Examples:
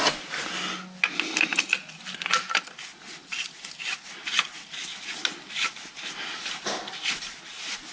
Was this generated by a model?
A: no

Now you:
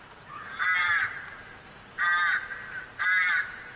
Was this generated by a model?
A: yes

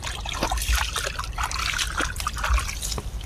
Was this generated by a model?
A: no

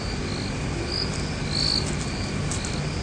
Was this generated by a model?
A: no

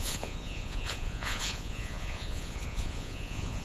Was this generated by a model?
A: yes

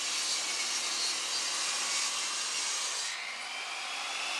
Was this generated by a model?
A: no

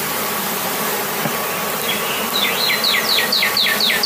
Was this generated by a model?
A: no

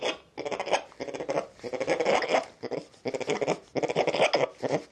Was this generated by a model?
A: no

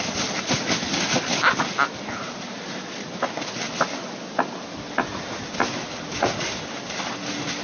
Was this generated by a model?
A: no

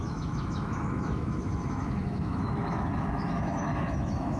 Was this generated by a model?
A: yes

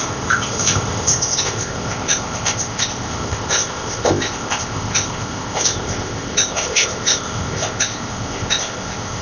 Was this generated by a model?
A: yes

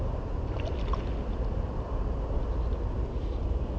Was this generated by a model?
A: no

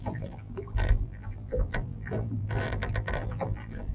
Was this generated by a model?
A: yes